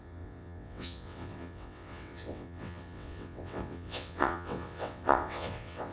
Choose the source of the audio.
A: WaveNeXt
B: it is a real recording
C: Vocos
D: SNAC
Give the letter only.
A